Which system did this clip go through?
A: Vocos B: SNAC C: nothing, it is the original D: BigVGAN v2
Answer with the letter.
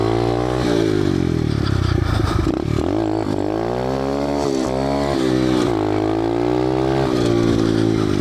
C